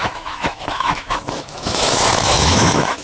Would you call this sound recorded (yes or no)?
no